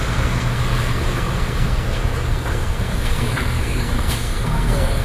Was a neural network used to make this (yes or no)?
yes